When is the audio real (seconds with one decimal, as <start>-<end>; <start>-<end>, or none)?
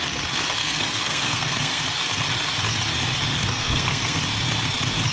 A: 0.0-0.6; 1.8-3.3; 4.2-5.1